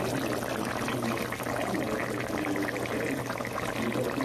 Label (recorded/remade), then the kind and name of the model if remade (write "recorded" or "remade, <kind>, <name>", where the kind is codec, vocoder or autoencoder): recorded